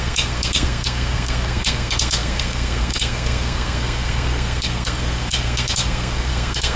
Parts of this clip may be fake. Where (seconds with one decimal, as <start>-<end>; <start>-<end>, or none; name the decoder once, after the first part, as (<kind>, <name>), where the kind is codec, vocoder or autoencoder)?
0.0-6.8 (codec, SNAC)

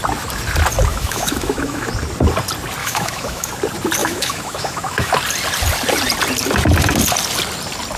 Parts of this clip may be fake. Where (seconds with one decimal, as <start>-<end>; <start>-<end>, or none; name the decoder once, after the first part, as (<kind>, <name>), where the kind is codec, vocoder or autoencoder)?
0.9-1.9 (autoencoder, DAC-VAE); 2.8-3.5; 4.0-5.1

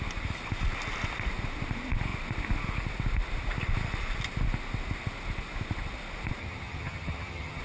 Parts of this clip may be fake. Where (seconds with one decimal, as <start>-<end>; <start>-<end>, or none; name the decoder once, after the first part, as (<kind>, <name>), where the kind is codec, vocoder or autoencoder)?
6.4-7.6 (vocoder, HiFi-GAN)

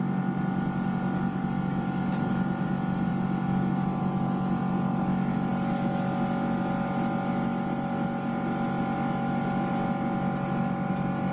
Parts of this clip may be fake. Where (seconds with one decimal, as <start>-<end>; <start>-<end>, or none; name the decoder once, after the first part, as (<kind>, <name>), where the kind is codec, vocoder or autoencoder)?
2.1-2.7 (vocoder, BigVGAN v2)

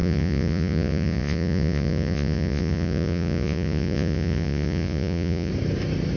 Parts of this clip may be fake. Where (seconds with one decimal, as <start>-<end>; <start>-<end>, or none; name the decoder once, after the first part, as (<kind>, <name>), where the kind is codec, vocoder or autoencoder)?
0.0-5.5 (vocoder, Vocos)